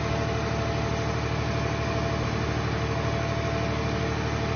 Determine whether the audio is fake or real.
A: real